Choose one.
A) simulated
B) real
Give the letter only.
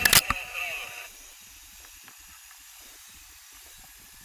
B